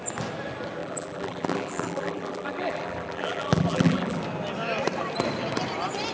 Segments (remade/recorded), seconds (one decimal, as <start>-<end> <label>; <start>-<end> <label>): 0.0-0.8 recorded; 0.8-4.2 remade; 4.2-6.1 recorded